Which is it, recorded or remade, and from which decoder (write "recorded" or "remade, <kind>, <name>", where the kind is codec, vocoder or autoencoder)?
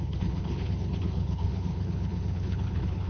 remade, codec, HILCodec